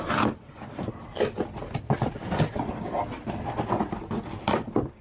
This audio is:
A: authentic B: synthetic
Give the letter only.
A